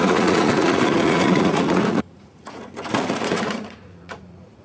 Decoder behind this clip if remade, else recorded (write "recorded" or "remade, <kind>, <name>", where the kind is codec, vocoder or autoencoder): remade, vocoder, Vocos